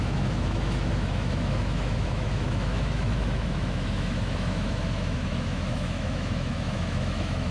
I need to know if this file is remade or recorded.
remade